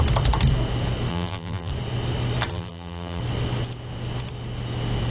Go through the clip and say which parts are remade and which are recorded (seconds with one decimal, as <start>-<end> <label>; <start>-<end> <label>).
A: 0.0-1.1 recorded; 1.1-1.7 remade; 1.7-2.5 recorded; 2.5-3.2 remade; 3.2-5.1 recorded